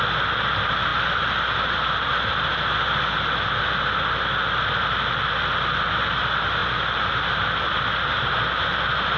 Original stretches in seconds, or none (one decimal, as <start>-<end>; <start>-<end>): 0.0-9.2